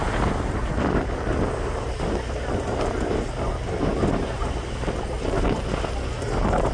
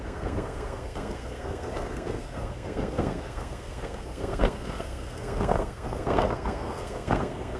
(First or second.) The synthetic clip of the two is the second